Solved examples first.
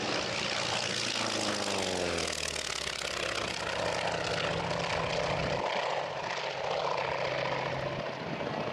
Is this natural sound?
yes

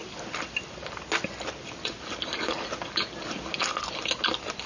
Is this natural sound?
yes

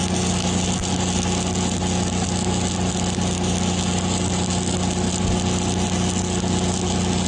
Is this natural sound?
yes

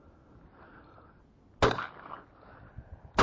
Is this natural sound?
yes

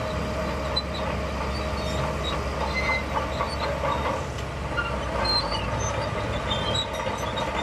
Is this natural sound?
yes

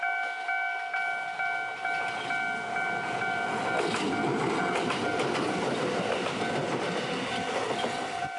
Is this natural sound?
yes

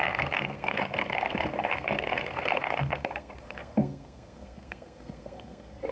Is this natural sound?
no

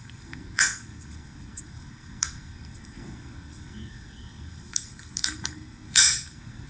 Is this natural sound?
no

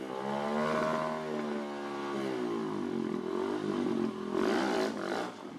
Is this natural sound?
yes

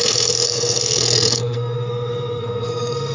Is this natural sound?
no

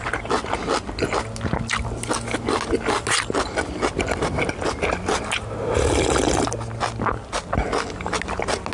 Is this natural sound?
yes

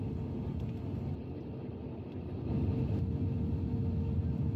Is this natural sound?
yes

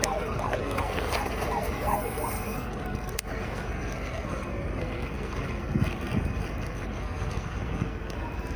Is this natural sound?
no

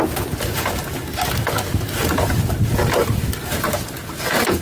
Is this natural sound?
yes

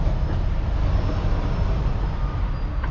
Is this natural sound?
yes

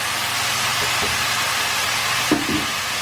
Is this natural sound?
yes